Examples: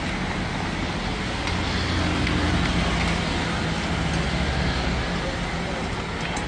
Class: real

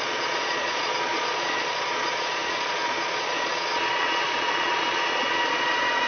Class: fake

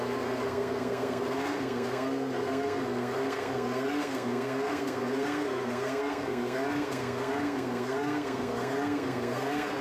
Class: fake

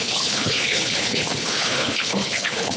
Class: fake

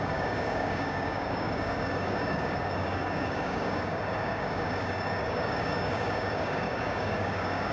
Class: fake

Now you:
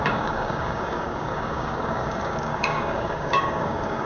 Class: fake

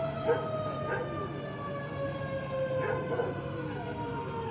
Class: real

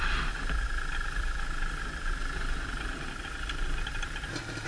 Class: real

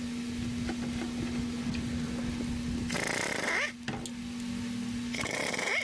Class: real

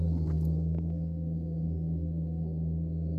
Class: fake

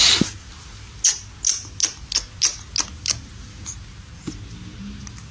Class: real